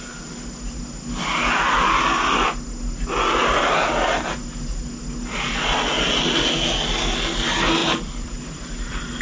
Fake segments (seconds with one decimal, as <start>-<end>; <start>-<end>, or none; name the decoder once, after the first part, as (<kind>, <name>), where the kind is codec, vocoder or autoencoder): 7.8-9.2 (vocoder, BigVGAN v2)